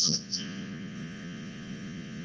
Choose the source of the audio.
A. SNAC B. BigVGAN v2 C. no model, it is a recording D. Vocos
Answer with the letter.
D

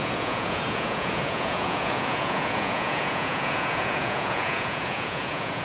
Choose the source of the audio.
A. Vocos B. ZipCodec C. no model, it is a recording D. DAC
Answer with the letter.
A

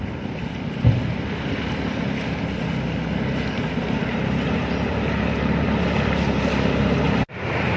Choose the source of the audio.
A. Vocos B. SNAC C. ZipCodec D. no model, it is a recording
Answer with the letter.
D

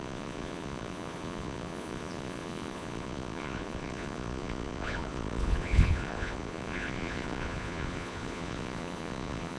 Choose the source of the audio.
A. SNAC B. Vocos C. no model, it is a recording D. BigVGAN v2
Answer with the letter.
B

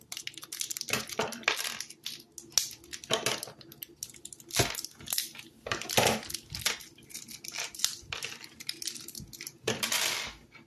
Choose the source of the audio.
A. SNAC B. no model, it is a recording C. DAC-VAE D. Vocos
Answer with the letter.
B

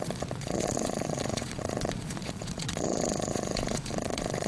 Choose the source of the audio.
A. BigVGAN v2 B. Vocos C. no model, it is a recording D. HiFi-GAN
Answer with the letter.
B